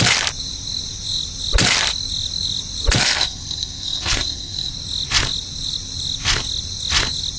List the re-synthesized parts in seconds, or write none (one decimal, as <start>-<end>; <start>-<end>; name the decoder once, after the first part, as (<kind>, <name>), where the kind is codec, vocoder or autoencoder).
3.0-4.7 (codec, SNAC)